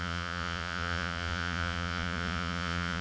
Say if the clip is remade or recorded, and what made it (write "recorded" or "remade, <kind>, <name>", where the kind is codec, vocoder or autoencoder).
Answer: remade, vocoder, Vocos